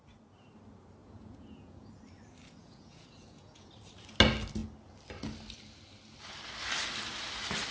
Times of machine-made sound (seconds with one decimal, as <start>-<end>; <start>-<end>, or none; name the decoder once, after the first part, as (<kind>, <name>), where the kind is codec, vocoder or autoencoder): 1.0-1.9 (vocoder, Vocos); 2.6-3.7